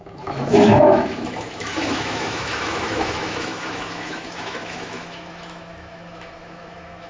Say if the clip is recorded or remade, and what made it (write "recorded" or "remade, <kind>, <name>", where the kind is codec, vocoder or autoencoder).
remade, autoencoder, DAC-VAE